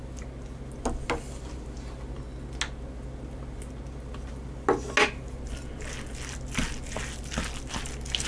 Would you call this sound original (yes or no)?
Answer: yes